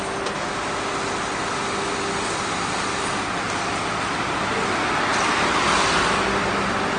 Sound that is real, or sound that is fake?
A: real